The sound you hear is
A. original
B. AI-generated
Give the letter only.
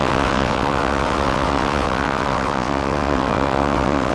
B